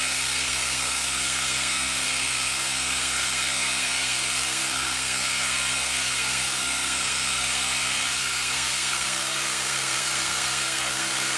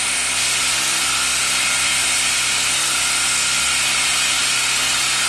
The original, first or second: second